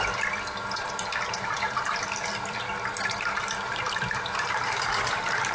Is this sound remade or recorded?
remade